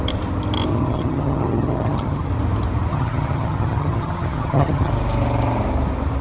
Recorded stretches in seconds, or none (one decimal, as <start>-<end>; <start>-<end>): 0.0-0.7; 2.3-2.9; 4.9-6.2